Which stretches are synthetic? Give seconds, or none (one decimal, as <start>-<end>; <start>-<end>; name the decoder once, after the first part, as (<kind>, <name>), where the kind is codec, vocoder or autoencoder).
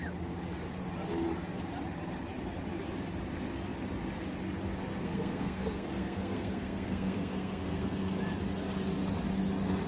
4.9-8.1 (codec, SNAC)